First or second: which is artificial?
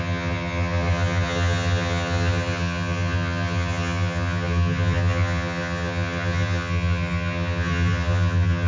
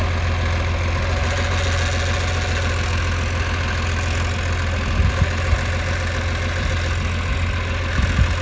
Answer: first